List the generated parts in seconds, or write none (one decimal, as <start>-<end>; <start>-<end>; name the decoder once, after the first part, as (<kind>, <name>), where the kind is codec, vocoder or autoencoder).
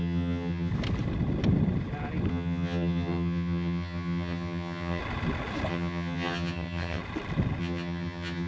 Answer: 0.0-0.7 (vocoder, HiFi-GAN); 2.3-5.0; 5.7-7.0; 7.6-8.5